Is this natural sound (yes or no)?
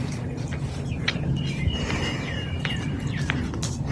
yes